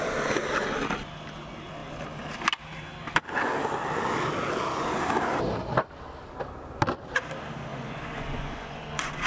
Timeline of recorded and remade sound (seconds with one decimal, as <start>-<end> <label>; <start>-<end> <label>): 0.0-7.7 recorded; 7.7-9.3 remade